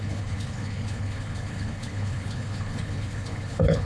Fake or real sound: fake